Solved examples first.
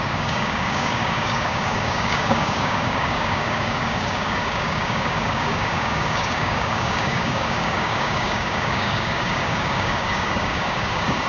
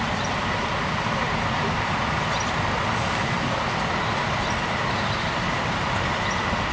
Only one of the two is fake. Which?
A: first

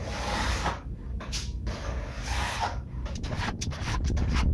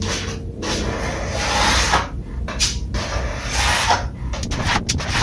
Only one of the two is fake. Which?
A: first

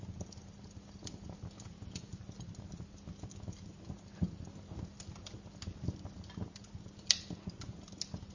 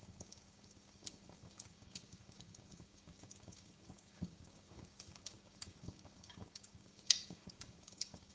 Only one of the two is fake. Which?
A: second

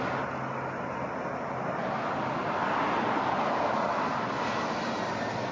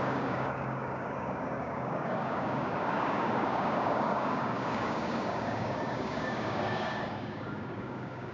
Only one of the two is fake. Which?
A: second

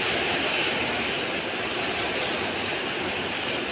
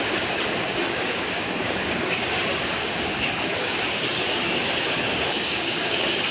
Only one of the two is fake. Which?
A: second